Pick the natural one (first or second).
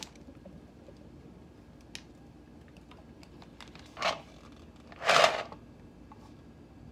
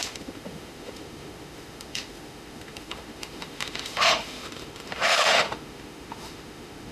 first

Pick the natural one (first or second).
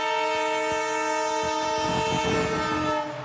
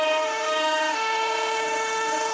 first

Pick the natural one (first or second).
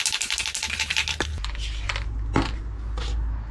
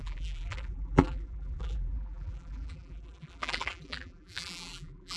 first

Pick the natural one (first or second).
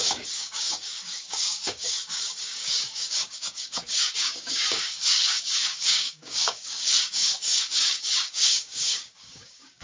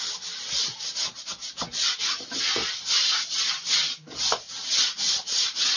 second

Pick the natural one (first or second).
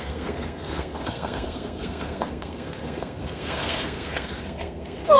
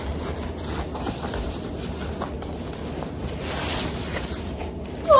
second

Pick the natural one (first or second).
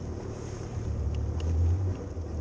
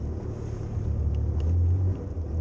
second